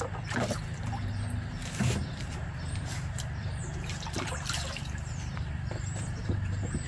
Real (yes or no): no